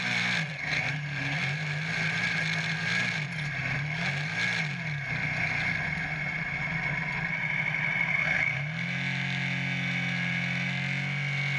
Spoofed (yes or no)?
no